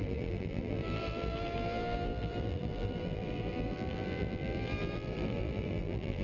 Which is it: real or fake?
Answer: fake